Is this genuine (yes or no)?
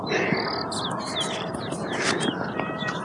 yes